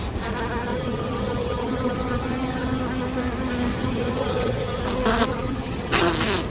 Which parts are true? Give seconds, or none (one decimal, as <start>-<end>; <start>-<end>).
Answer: 0.0-0.7; 2.8-3.7; 4.8-5.3; 6.1-6.5